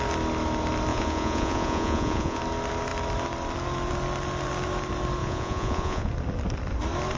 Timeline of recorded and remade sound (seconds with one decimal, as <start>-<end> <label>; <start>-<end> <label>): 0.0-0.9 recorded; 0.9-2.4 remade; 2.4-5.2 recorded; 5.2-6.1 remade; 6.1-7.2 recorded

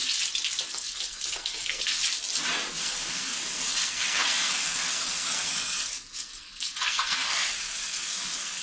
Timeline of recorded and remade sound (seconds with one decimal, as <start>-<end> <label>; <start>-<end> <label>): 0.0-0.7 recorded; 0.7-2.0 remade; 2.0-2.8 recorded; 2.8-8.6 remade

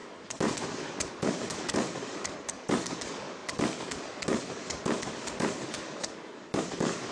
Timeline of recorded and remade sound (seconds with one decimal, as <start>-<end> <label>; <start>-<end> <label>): 0.0-7.1 remade

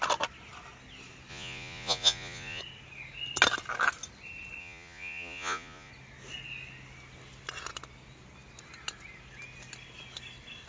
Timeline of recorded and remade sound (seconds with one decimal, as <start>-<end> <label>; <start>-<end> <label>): 0.0-1.3 recorded; 1.3-2.6 remade; 2.6-4.6 recorded; 4.6-5.9 remade; 5.9-10.7 recorded

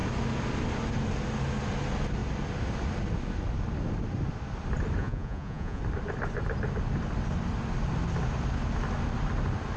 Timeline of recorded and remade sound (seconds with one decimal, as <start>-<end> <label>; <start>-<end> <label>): 0.0-5.0 recorded; 5.0-5.8 remade; 5.8-9.8 recorded

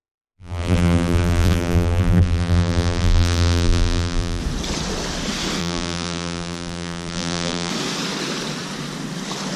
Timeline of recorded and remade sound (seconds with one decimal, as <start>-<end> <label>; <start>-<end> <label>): 0.0-4.4 remade; 4.4-5.6 recorded; 5.6-7.7 remade; 7.7-9.6 recorded